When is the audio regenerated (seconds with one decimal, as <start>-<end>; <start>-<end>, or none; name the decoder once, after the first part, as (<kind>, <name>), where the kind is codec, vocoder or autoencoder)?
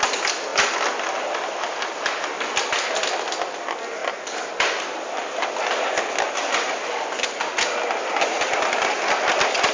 none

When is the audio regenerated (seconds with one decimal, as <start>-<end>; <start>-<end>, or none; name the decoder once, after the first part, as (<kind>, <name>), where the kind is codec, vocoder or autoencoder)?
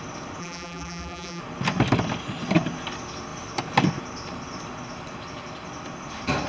0.4-1.4 (vocoder, BigVGAN v2)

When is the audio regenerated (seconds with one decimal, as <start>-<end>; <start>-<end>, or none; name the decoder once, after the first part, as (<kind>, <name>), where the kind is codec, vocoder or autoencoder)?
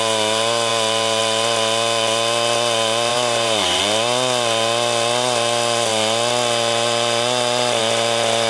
3.1-3.8 (vocoder, BigVGAN v2)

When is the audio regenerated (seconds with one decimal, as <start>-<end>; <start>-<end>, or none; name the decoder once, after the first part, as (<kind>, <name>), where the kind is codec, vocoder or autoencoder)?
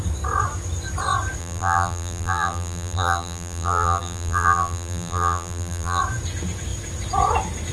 1.4-6.0 (vocoder, BigVGAN v2)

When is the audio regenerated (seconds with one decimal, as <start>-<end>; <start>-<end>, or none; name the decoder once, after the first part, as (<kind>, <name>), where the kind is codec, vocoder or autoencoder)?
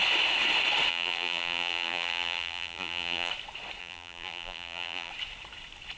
0.9-3.3 (vocoder, BigVGAN v2); 3.8-5.1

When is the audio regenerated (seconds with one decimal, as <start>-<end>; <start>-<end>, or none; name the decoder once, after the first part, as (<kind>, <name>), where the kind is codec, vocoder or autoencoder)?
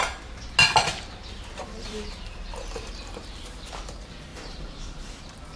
1.6-3.7 (vocoder, BigVGAN v2); 4.3-5.1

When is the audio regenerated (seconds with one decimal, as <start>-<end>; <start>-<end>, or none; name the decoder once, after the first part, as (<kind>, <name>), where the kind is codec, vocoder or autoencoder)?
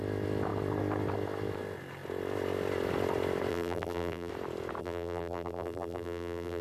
3.5-4.3 (vocoder, BigVGAN v2); 4.8-6.6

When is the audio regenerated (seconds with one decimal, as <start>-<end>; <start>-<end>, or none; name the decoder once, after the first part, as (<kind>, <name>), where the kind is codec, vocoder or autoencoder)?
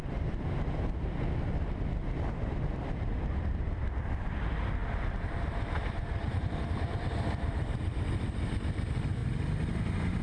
0.0-4.8 (vocoder, BigVGAN v2); 5.9-10.2